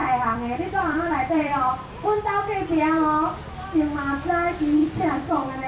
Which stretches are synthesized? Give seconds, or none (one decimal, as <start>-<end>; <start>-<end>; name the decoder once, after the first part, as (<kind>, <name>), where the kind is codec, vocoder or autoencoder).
0.0-1.7 (vocoder, BigVGAN v2); 4.8-5.7

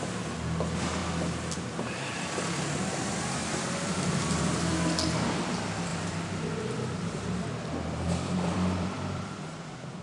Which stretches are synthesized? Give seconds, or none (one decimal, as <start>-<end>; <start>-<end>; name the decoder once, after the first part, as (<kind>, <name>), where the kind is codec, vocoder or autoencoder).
3.4-4.7 (vocoder, BigVGAN v2); 5.9-9.3